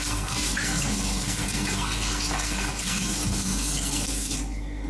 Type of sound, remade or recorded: remade